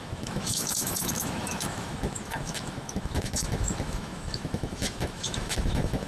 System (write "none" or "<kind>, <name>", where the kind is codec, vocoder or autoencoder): autoencoder, DAC-VAE